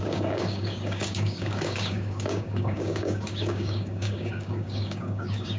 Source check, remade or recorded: remade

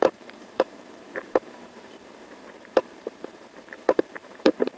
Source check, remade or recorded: remade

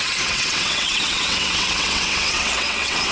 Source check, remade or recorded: remade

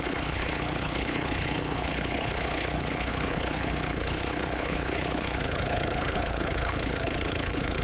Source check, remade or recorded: remade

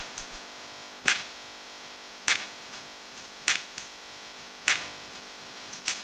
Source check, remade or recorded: remade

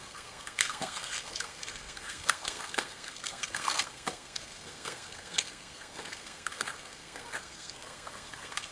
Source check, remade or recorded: remade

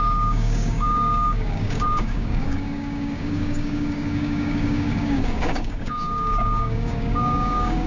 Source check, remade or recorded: remade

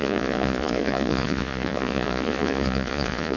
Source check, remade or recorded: remade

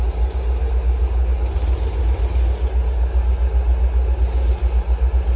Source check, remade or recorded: recorded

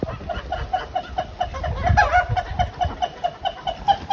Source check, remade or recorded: recorded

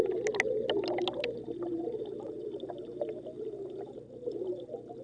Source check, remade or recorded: recorded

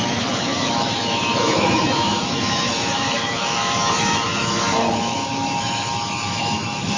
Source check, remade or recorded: remade